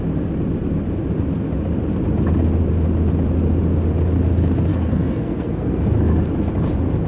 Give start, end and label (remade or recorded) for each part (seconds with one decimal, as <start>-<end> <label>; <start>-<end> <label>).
0.0-4.7 recorded; 4.7-5.8 remade; 5.8-7.1 recorded